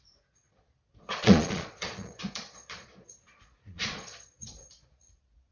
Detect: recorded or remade remade